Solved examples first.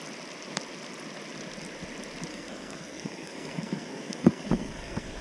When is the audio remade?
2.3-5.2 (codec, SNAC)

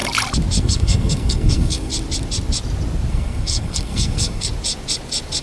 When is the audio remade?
0.6-1.9 (codec, SNAC); 3.1-4.5

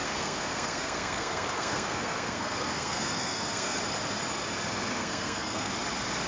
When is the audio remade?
0.0-3.8 (codec, SNAC); 5.0-5.7

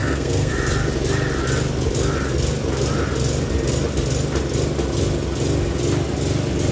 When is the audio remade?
0.0-0.5 (codec, SNAC)

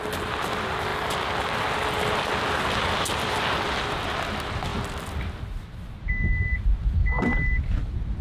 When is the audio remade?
none

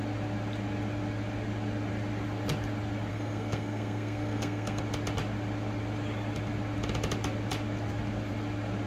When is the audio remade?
3.1-4.8 (codec, SNAC)

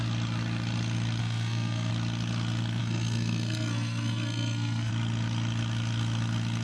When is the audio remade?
1.2-1.9 (codec, SNAC); 2.8-4.9

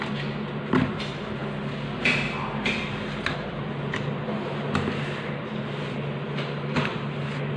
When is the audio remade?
none